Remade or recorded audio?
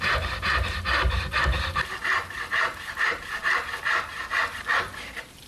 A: remade